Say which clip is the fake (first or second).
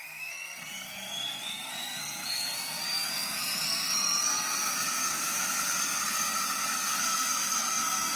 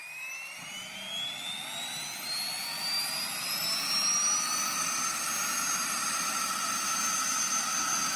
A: first